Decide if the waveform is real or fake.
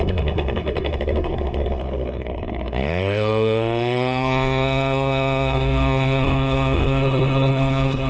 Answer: fake